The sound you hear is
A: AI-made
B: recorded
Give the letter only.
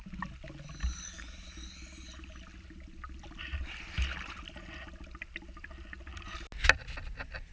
B